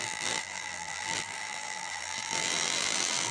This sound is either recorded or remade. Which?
remade